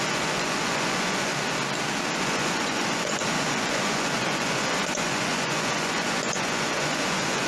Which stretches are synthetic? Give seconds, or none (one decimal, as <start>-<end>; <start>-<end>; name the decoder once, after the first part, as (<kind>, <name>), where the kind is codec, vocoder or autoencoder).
0.0-1.3 (vocoder, Vocos); 2.2-7.5